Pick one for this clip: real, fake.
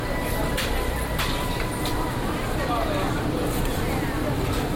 real